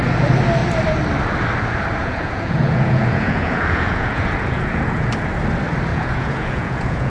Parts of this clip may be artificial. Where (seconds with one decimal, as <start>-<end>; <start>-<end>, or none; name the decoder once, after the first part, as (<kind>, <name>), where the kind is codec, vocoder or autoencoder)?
2.0-5.1 (vocoder, Vocos); 5.9-7.1